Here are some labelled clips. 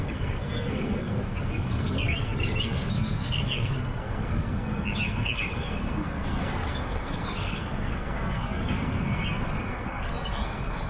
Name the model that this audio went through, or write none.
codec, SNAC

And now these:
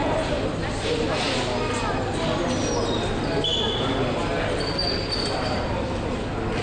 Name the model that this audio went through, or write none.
none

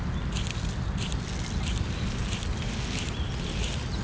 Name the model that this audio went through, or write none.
none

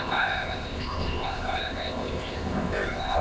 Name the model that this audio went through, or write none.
codec, ZipCodec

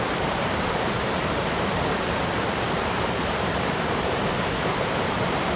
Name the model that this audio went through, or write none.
vocoder, BigVGAN v2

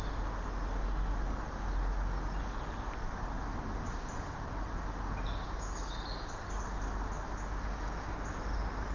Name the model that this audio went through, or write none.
none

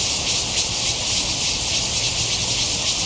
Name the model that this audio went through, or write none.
none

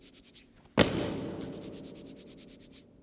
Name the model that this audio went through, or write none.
none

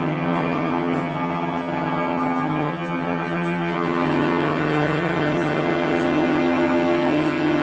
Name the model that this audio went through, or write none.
vocoder, HiFi-GAN